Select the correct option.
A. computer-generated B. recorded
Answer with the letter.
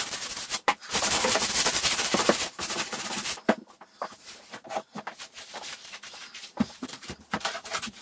A